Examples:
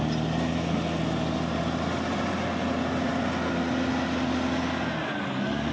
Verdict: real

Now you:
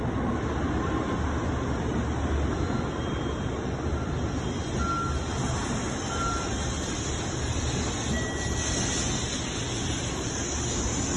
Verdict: real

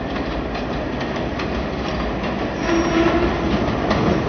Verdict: real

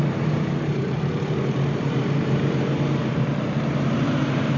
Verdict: fake